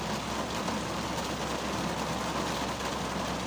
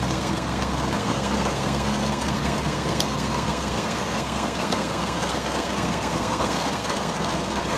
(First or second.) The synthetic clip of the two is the second